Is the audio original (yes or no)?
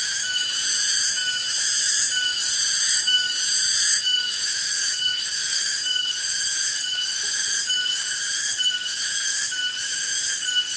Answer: no